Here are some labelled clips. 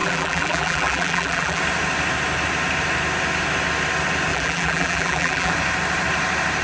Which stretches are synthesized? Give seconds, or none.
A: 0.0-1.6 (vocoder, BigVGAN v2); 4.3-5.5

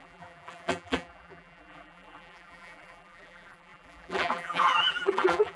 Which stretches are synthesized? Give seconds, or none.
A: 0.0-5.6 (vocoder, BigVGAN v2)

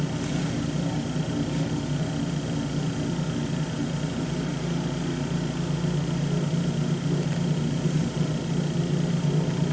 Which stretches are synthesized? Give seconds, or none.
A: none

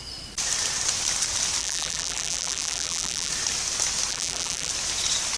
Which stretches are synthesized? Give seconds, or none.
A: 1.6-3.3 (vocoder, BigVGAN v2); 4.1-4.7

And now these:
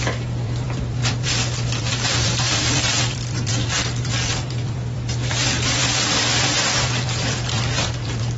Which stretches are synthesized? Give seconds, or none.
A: 0.0-8.4 (vocoder, BigVGAN v2)

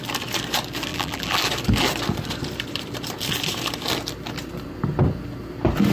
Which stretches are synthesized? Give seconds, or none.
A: 0.9-1.5 (vocoder, BigVGAN v2)

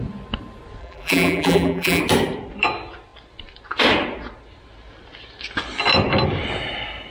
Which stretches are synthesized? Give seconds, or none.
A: 0.8-2.0 (vocoder, BigVGAN v2)